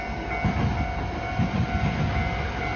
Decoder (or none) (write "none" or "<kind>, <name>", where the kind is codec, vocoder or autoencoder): none